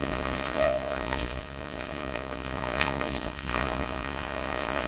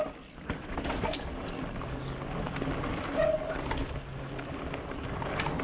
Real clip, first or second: second